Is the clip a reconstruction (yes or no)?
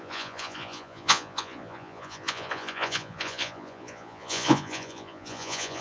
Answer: yes